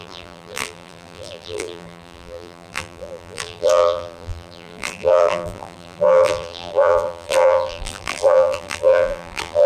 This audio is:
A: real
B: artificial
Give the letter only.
B